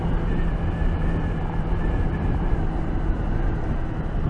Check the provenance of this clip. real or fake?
real